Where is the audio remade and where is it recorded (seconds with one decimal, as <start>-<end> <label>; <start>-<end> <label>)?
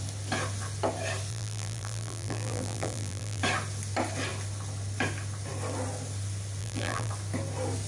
0.0-1.3 recorded; 1.3-3.4 remade; 3.4-6.6 recorded; 6.6-7.1 remade; 7.1-7.9 recorded